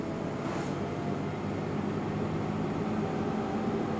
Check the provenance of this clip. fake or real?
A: real